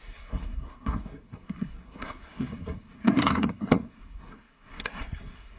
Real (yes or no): no